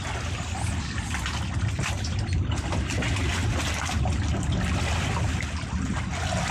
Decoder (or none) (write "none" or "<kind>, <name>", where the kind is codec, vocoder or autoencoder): none